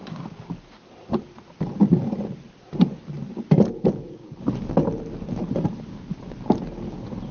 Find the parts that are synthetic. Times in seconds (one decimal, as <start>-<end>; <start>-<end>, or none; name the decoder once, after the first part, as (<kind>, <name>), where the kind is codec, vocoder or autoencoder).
none